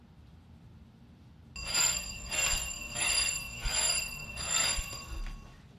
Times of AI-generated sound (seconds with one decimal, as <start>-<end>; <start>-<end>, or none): 1.7-5.2